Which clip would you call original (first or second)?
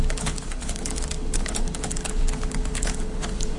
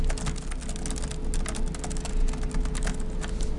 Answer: second